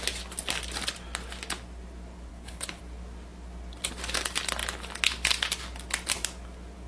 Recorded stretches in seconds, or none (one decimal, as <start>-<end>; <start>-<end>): 0.0-2.3; 2.8-6.9